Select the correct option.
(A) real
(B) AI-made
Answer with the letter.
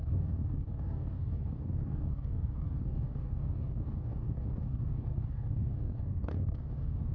B